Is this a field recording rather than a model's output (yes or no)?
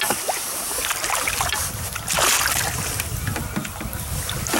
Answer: yes